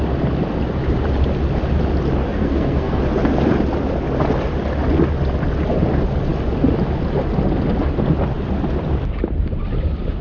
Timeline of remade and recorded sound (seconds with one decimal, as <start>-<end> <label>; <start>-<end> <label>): 0.0-2.2 recorded; 2.2-3.0 remade; 3.0-10.2 recorded